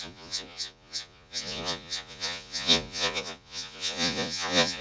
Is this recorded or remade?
remade